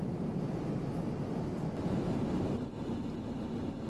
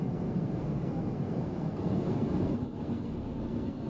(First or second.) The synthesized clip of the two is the second